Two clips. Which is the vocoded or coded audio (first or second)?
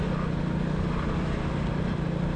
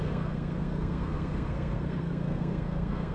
second